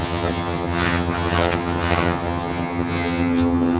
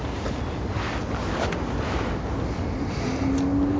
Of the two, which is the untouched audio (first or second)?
second